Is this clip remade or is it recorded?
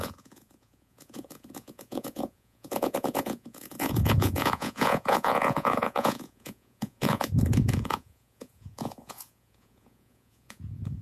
remade